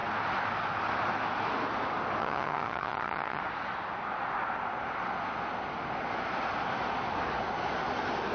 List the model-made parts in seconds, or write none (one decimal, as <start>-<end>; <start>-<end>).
2.2-3.4